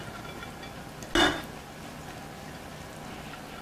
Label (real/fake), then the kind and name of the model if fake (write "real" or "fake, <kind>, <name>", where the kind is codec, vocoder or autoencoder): real